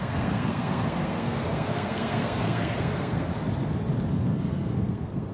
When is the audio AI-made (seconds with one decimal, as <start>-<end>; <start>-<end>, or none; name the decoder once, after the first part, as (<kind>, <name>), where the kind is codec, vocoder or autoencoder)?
0.0-3.3 (codec, SNAC); 4.1-5.3